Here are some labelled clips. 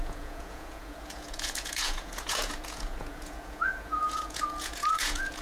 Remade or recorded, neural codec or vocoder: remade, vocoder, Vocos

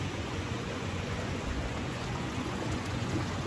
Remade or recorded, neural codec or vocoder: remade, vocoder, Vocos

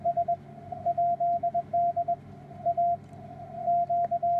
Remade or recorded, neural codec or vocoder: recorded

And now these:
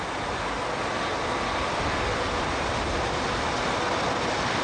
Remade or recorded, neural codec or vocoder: recorded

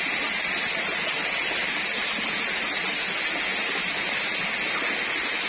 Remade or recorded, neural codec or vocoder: recorded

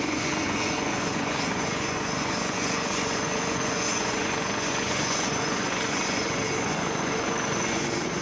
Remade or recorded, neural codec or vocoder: remade, vocoder, Vocos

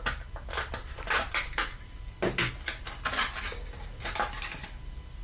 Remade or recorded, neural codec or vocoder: recorded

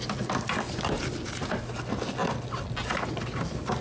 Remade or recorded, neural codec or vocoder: recorded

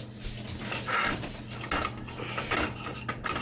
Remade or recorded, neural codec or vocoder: recorded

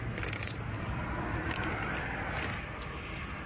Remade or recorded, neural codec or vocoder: recorded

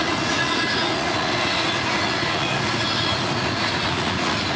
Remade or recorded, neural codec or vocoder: remade, vocoder, Vocos